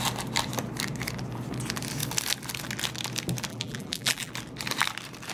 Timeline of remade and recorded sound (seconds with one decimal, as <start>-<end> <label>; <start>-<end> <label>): 0.0-3.5 recorded; 3.5-4.3 remade; 4.3-5.3 recorded